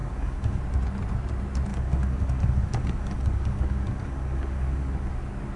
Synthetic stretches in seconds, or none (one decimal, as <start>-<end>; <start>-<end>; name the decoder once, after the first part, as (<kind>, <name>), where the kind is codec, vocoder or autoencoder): 0.0-0.6 (codec, DAC); 1.7-5.1